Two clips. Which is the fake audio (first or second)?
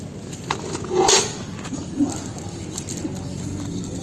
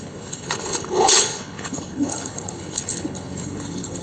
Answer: second